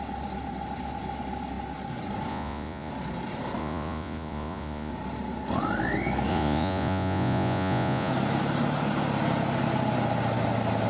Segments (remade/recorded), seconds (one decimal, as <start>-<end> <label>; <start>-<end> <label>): 0.0-2.3 recorded; 2.3-2.9 remade; 2.9-3.6 recorded; 3.6-4.9 remade; 4.9-6.3 recorded; 6.3-8.1 remade; 8.1-10.9 recorded